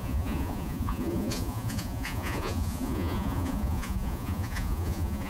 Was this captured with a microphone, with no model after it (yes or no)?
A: no